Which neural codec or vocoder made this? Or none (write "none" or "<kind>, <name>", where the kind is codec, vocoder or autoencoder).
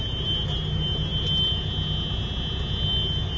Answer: none